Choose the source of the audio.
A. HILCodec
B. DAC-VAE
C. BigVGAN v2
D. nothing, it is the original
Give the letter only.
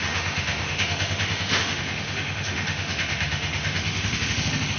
B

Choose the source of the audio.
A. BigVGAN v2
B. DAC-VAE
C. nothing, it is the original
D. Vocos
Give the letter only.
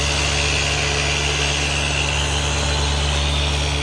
C